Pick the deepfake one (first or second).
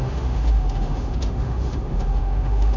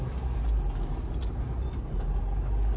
first